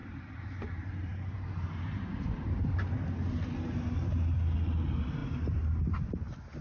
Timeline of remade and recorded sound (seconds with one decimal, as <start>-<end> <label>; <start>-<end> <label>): 0.0-3.4 remade; 3.4-5.2 recorded; 5.2-6.1 remade; 6.1-6.6 recorded